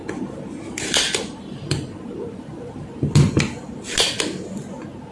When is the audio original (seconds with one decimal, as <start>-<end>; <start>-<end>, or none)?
3.1-5.1